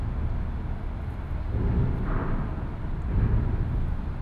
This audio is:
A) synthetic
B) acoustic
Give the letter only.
B